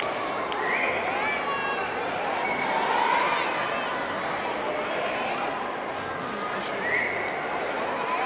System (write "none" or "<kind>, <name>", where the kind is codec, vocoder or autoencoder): none